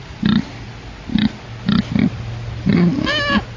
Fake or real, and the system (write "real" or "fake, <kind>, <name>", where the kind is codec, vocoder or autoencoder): real